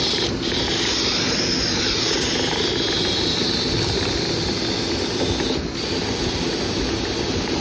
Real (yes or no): yes